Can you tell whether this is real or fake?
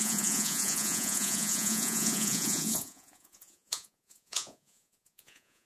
fake